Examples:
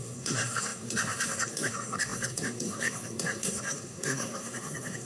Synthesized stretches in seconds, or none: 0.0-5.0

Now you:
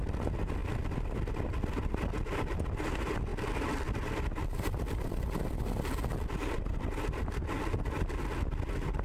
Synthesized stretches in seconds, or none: none

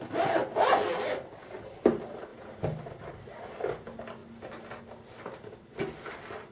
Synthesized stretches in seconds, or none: none

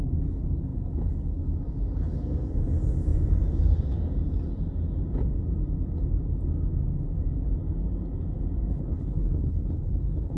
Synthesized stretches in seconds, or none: 8.7-10.4

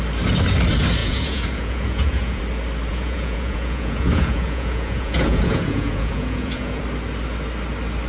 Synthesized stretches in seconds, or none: 1.0-2.4; 2.9-6.8

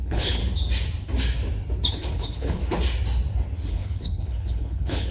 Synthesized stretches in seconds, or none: 0.0-0.4; 1.9-2.6; 3.7-5.1